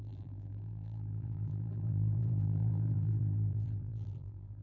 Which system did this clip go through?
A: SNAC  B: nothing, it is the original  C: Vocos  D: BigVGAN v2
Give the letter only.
D